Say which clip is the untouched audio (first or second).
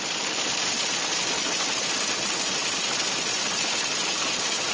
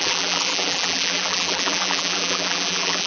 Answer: first